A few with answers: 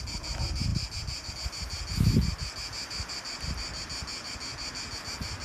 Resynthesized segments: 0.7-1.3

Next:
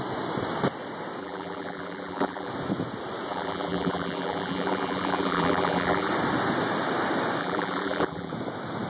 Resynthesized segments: 1.2-2.5; 3.3-6.1; 7.4-8.3

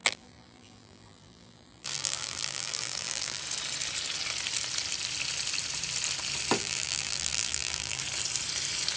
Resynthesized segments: 0.0-3.4; 6.6-8.0

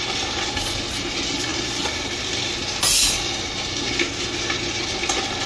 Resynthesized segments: 1.5-2.5

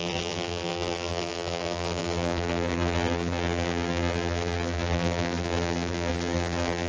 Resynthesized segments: 0.0-6.9

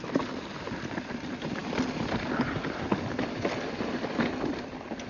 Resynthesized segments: none

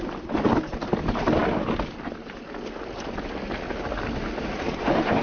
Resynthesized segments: none